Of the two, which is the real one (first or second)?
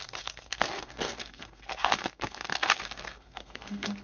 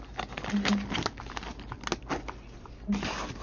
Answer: second